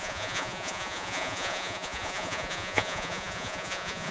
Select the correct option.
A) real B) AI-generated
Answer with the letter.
B